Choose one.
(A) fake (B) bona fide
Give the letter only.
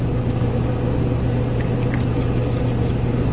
B